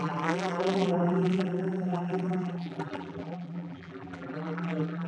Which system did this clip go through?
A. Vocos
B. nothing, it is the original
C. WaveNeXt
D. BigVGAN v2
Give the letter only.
D